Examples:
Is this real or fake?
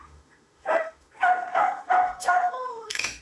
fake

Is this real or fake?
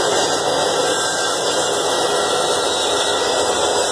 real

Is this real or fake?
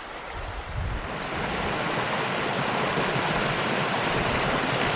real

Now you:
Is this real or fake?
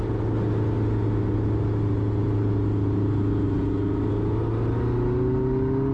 real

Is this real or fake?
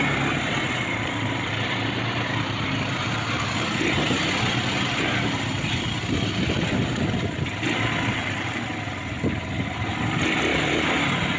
real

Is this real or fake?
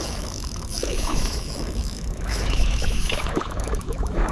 fake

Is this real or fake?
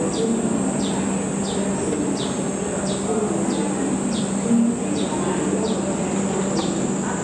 real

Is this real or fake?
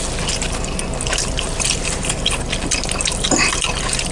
real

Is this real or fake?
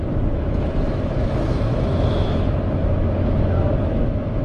fake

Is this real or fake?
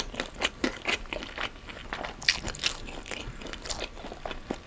real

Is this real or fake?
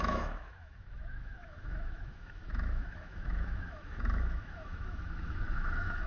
fake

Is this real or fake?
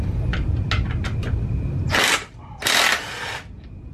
real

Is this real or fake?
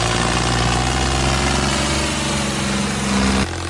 real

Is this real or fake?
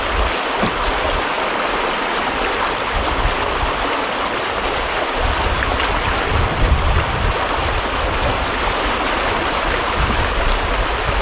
real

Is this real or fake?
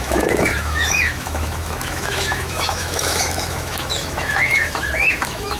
fake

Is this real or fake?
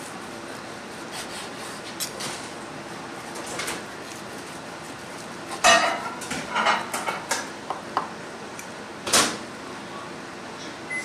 real